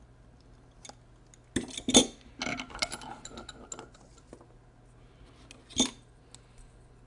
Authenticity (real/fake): real